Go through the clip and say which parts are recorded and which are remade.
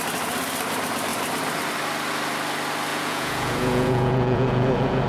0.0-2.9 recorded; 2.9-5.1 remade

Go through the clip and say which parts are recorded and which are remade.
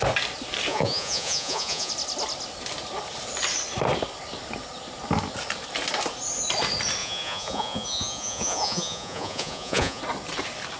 0.0-0.7 recorded; 0.7-1.9 remade; 1.9-7.0 recorded; 7.0-10.0 remade; 10.0-10.8 recorded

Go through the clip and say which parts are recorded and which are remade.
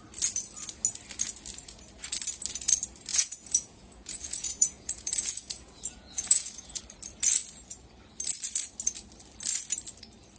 0.0-3.1 recorded; 3.1-6.8 remade; 6.8-10.4 recorded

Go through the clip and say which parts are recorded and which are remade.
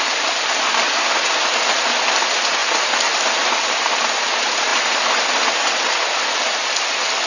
0.0-7.3 recorded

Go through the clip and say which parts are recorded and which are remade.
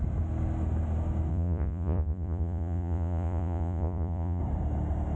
0.0-1.3 recorded; 1.3-4.4 remade; 4.4-5.2 recorded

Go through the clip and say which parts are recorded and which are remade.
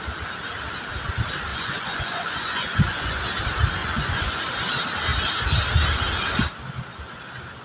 0.0-1.5 recorded; 1.5-3.2 remade; 3.2-3.8 recorded; 3.8-4.4 remade; 4.4-7.6 recorded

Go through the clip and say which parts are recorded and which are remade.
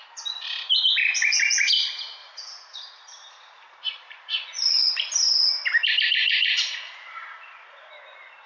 0.0-2.2 recorded; 2.2-4.9 remade; 4.9-6.2 recorded; 6.2-7.9 remade; 7.9-8.5 recorded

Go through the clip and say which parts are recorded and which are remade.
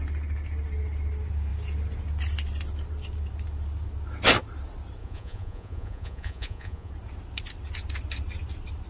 0.0-5.0 recorded; 5.0-6.9 remade; 6.9-8.9 recorded